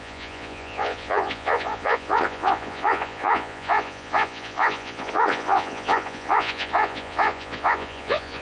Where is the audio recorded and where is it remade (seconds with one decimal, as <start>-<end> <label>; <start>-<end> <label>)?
0.0-8.4 remade